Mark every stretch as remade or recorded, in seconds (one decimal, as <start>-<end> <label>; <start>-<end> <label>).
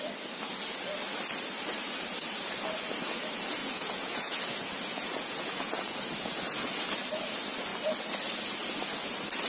0.0-3.6 recorded; 3.6-6.7 remade; 6.7-9.5 recorded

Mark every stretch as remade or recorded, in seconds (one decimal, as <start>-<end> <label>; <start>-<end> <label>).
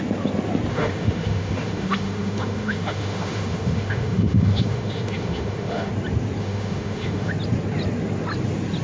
0.0-0.7 recorded; 0.7-5.9 remade; 5.9-6.4 recorded; 6.4-7.3 remade; 7.3-8.8 recorded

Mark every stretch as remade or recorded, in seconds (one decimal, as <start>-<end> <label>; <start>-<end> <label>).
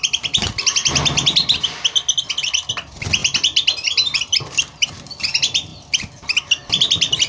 0.0-3.2 recorded; 3.2-5.2 remade; 5.2-7.3 recorded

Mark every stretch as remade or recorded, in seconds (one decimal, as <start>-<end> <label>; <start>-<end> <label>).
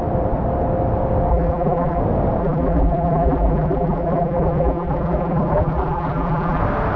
0.0-1.3 recorded; 1.3-2.0 remade; 2.0-2.4 recorded; 2.4-6.6 remade; 6.6-7.0 recorded